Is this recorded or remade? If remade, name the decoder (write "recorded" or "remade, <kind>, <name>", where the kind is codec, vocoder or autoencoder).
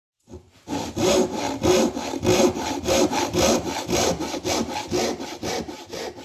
recorded